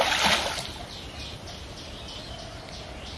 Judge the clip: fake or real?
real